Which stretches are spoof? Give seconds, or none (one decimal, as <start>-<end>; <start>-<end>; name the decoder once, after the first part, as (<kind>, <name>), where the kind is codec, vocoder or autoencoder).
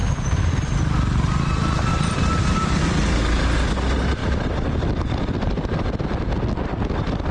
0.0-0.8 (vocoder, BigVGAN v2); 1.9-3.2; 4.2-5.2